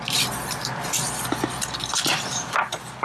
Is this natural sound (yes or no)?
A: yes